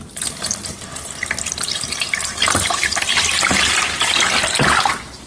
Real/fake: real